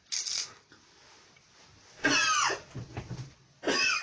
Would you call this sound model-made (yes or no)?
no